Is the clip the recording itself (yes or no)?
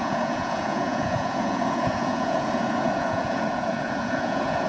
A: no